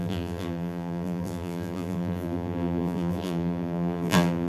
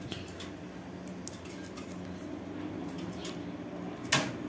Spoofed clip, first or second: first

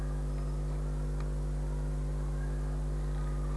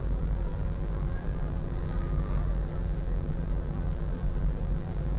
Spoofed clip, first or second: second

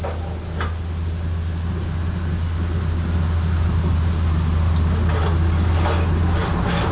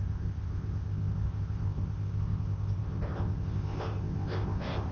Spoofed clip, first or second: second